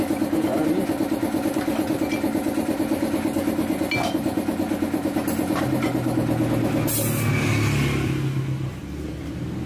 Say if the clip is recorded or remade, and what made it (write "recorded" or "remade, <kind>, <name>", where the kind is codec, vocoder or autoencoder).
recorded